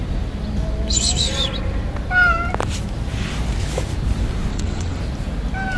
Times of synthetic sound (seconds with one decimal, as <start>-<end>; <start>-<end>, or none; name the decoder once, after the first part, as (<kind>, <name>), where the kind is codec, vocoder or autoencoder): 4.5-5.0 (vocoder, WaveNeXt)